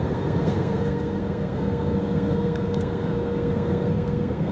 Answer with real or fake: fake